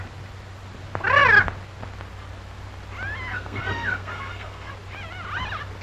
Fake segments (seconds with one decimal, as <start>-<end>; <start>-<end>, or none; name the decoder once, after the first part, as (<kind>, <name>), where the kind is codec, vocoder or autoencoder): 3.3-4.7 (codec, SNAC)